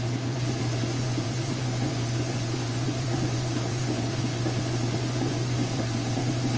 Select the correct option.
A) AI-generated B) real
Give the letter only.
A